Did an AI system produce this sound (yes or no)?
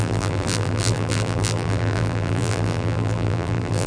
yes